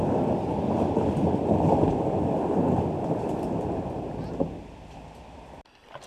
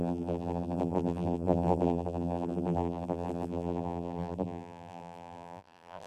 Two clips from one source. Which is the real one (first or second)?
first